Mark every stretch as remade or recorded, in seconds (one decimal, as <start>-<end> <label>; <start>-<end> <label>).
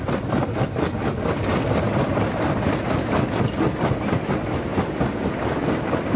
0.0-6.2 recorded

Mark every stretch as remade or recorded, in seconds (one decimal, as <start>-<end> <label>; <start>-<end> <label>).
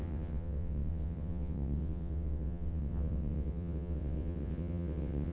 0.0-5.3 remade